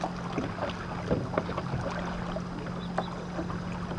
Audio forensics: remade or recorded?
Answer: recorded